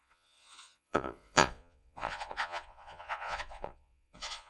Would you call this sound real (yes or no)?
no